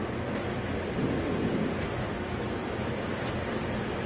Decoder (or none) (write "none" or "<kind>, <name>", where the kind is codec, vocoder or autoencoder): vocoder, BigVGAN v2